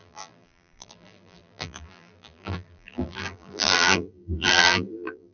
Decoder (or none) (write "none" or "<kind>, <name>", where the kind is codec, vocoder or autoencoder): vocoder, BigVGAN v2